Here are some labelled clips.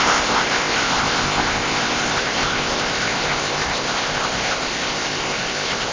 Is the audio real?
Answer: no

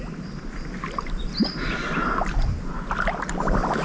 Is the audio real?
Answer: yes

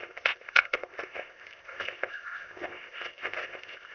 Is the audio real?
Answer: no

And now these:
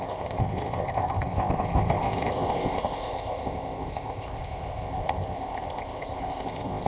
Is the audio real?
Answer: no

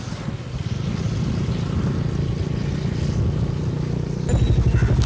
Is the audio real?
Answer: yes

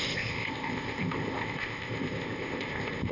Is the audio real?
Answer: no